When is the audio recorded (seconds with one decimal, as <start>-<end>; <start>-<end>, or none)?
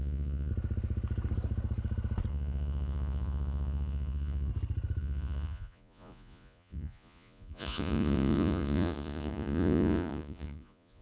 0.5-2.3; 4.5-5.0